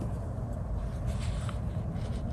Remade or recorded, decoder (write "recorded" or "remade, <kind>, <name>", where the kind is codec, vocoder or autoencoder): recorded